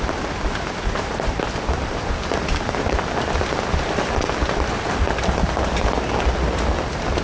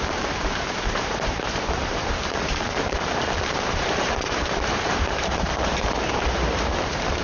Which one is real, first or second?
first